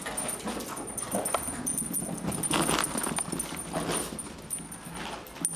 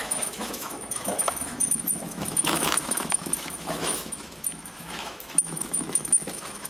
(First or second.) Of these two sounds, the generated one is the second